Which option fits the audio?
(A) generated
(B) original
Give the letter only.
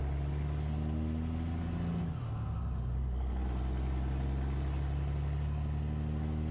B